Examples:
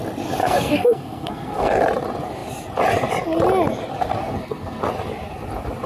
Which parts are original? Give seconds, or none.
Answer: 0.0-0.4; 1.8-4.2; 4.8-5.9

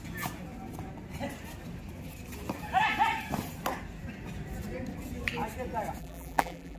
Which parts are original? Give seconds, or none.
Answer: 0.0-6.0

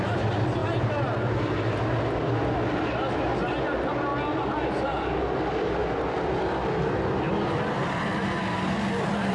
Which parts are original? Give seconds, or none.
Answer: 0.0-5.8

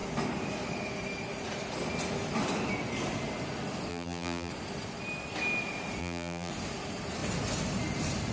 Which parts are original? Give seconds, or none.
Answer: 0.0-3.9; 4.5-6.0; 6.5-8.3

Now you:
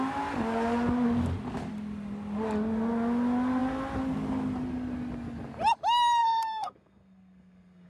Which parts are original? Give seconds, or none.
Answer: 0.0-6.2

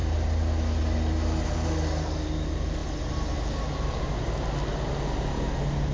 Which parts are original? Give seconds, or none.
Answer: 0.0-5.9